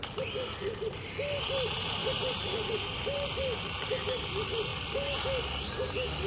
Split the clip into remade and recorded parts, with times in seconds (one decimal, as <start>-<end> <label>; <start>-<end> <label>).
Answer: 0.0-2.0 remade; 2.0-3.9 recorded; 3.9-6.3 remade